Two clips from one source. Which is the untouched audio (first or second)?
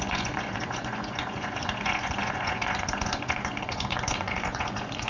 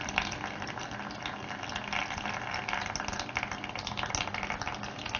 second